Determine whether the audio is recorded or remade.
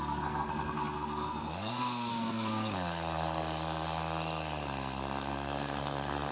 remade